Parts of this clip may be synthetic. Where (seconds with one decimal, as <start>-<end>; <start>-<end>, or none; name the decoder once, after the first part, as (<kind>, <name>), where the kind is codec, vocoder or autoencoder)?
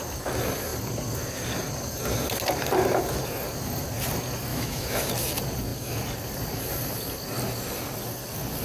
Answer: 4.5-5.1 (autoencoder, DAC-VAE)